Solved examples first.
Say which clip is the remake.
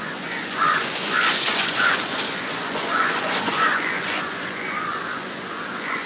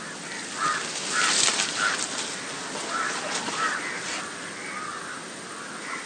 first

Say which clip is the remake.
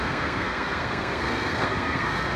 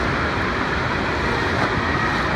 first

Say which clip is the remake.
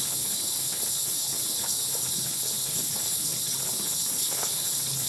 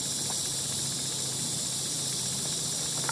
first